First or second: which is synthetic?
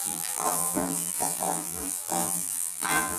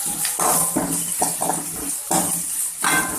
first